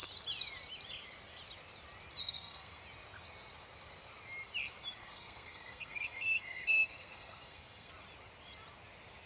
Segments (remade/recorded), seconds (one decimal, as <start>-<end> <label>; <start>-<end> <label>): 0.0-2.2 recorded; 2.2-2.8 remade; 2.8-5.0 recorded; 5.0-7.9 remade; 7.9-9.3 recorded